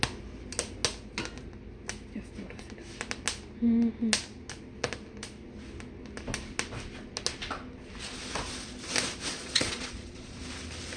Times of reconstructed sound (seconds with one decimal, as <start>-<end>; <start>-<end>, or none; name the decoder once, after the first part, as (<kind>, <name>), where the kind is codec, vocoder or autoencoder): 9.3-10.4 (vocoder, Vocos)